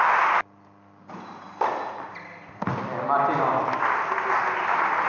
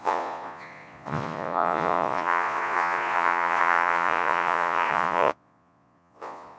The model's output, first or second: second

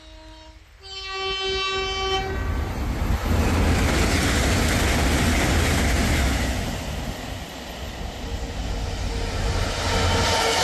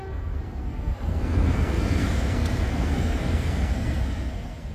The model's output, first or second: second